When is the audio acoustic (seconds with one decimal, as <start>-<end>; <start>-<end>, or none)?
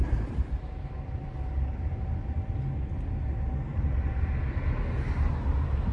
1.3-3.7; 4.4-5.9